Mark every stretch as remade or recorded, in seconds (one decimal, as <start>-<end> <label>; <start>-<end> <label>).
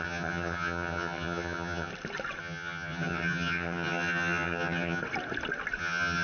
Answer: 0.0-1.9 remade; 1.9-2.4 recorded; 2.4-5.0 remade; 5.0-5.8 recorded; 5.8-6.2 remade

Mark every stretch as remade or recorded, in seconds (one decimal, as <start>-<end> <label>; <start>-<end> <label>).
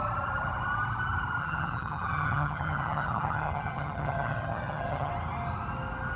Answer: 0.0-1.4 recorded; 1.4-5.1 remade; 5.1-6.2 recorded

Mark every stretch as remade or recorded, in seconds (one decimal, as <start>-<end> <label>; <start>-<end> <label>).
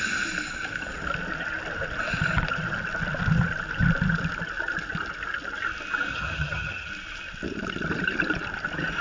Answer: 0.0-6.1 recorded; 6.1-6.9 remade; 6.9-9.0 recorded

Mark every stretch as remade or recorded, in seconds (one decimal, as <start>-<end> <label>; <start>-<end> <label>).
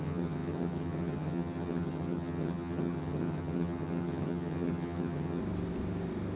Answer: 0.0-5.4 remade; 5.4-6.4 recorded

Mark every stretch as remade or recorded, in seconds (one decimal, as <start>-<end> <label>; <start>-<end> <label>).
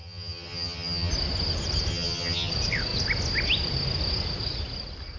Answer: 0.0-1.1 remade; 1.1-1.9 recorded; 1.9-2.5 remade; 2.5-5.2 recorded